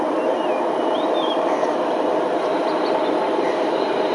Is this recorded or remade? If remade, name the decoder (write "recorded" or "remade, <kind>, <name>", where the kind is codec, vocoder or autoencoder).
remade, vocoder, BigVGAN v2